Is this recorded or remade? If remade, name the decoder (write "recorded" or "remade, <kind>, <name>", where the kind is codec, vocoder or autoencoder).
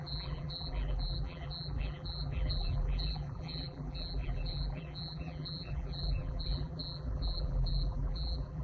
remade, vocoder, BigVGAN v2